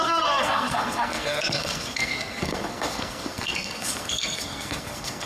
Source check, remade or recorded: remade